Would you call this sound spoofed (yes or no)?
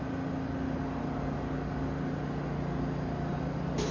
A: no